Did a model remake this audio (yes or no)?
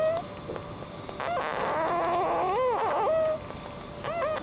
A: no